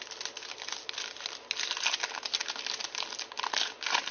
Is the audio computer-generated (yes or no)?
no